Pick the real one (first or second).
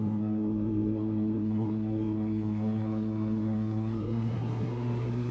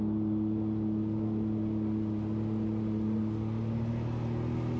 second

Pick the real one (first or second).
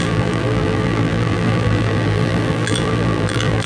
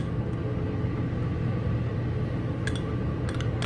second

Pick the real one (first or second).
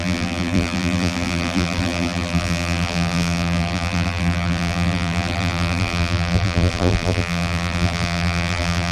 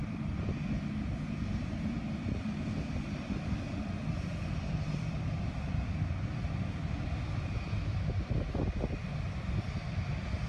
second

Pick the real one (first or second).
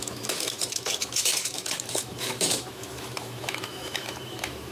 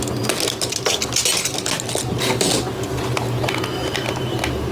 second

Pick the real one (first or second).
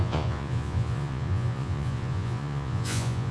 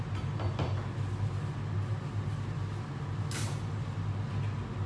second